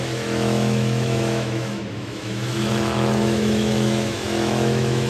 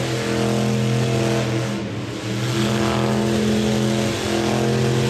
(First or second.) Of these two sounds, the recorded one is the second